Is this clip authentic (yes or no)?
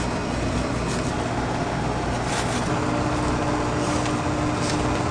yes